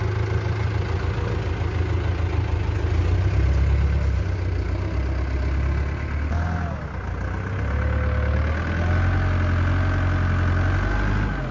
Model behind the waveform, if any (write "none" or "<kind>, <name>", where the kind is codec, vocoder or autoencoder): none